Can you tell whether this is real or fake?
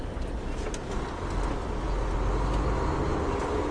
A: real